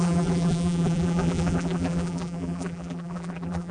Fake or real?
fake